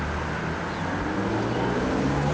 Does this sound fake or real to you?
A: real